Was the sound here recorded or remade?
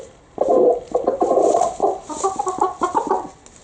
recorded